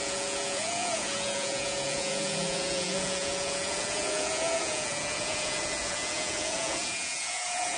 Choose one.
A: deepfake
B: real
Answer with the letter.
A